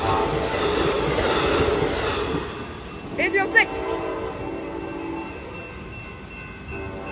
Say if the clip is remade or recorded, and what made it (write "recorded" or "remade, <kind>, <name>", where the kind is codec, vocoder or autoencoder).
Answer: recorded